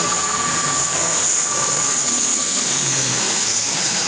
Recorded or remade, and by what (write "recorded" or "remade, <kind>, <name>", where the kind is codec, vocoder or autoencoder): remade, codec, SNAC